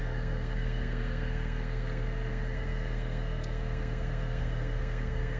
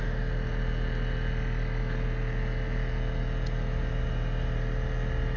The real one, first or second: second